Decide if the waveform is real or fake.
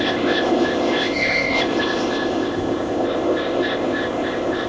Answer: fake